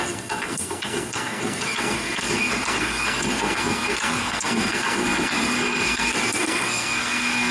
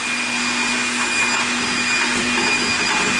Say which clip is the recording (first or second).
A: second